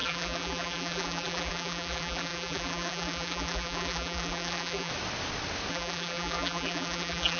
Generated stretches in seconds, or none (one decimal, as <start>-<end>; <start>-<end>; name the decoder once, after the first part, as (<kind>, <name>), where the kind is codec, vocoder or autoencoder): 0.0-4.9 (vocoder, BigVGAN v2); 5.7-7.4